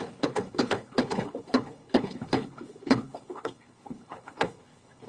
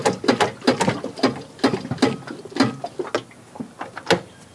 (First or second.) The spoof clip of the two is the first